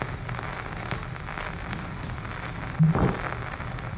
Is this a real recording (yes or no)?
yes